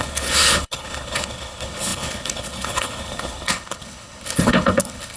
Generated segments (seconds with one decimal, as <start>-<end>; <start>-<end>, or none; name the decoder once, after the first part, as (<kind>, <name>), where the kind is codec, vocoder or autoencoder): 0.0-5.2 (codec, HILCodec)